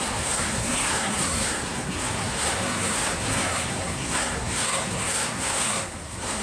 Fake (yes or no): yes